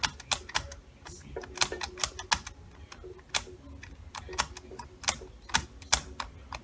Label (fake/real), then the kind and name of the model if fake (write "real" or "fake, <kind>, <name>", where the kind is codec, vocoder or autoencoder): real